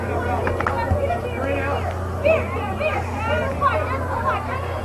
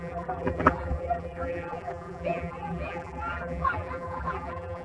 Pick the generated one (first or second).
second